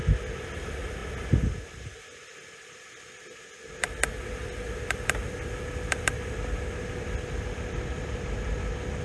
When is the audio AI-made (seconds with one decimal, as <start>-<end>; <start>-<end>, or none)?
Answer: none